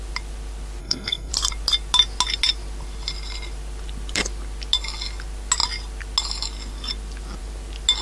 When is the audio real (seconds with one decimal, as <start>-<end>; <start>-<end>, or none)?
0.0-0.8; 1.3-8.0